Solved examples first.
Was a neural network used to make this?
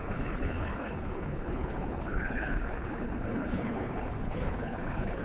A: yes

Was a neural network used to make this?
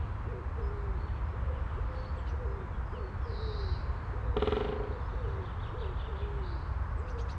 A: no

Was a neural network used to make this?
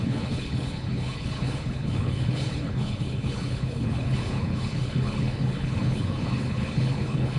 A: yes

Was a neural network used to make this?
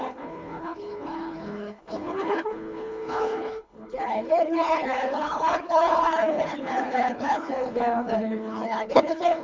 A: yes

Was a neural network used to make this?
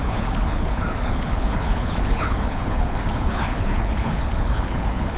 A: yes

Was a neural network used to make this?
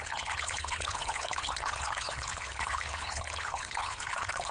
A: yes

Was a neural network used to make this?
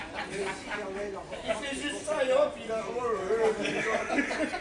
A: no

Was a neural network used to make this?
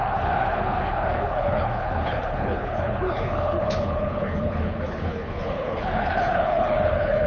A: yes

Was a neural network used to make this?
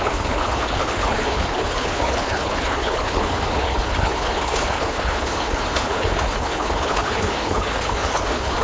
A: yes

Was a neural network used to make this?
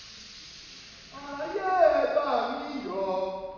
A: no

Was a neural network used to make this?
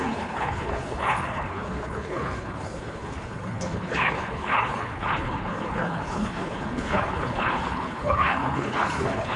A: yes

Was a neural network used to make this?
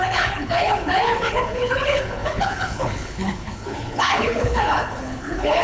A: yes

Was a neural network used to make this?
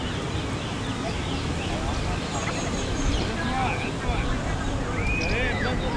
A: no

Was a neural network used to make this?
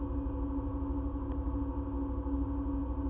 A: no